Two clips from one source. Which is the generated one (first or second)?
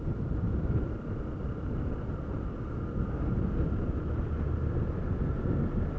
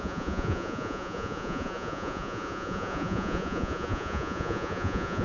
second